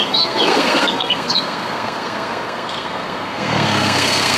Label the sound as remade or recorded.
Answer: remade